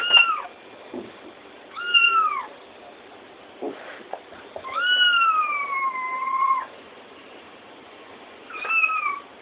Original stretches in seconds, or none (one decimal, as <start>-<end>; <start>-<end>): 0.0-6.2; 8.6-9.4